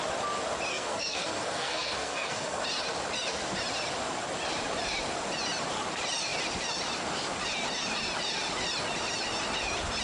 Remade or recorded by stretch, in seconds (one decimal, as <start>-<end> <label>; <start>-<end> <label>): 0.0-0.7 recorded; 0.7-2.6 remade; 2.6-10.0 recorded